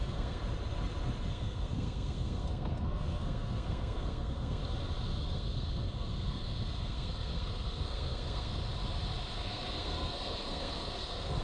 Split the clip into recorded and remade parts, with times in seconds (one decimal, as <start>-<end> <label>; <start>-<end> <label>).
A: 0.0-0.4 remade; 0.4-1.3 recorded; 1.3-4.6 remade; 4.6-5.2 recorded; 5.2-8.6 remade; 8.6-9.3 recorded; 9.3-11.4 remade